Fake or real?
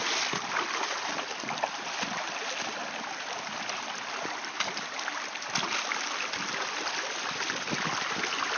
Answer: real